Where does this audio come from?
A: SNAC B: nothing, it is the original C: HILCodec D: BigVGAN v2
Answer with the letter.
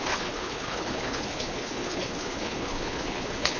C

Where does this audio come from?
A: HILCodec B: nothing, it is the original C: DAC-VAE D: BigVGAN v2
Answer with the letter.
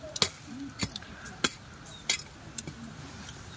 B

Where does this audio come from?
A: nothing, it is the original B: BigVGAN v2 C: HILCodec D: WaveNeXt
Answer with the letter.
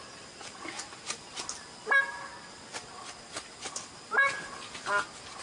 A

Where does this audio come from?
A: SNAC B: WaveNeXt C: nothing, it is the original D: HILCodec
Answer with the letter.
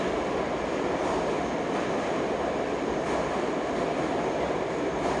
C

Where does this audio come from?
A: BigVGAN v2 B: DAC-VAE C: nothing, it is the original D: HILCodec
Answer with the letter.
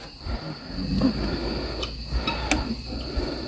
C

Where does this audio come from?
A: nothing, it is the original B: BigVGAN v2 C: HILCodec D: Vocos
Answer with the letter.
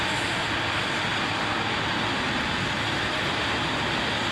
A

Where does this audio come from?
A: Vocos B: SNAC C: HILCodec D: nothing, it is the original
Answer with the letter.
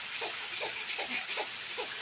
D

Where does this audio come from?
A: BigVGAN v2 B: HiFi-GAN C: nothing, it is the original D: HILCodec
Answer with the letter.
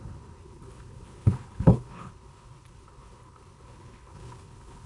D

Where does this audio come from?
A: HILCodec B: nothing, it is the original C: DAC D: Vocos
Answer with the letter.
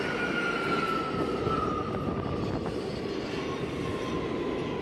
B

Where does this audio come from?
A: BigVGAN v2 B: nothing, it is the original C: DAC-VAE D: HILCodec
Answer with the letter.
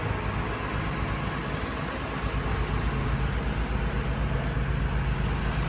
B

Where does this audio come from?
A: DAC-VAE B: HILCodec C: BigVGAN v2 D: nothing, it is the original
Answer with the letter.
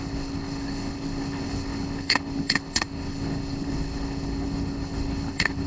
B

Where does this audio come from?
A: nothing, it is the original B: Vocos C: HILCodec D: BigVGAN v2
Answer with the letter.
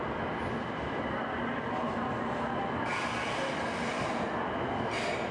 A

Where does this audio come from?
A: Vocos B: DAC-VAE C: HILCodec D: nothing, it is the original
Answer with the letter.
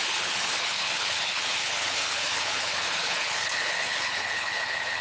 C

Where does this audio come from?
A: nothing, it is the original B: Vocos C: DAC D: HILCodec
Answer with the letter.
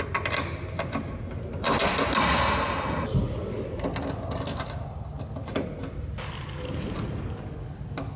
A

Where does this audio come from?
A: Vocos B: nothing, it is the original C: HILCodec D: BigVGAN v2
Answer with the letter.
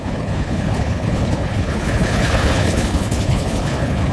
C